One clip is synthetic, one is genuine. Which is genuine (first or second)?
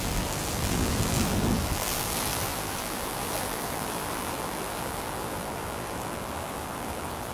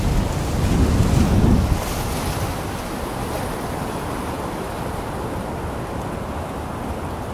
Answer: second